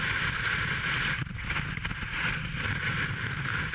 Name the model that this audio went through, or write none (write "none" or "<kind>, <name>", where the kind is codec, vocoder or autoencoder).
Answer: none